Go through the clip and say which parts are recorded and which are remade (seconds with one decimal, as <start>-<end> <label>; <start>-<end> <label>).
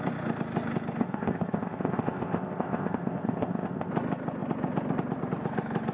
0.0-1.0 recorded; 1.0-3.9 remade; 3.9-5.9 recorded